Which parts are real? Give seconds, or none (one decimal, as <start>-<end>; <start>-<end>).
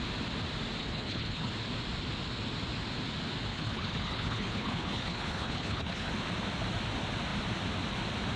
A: 0.0-0.8; 1.5-3.5; 6.1-8.4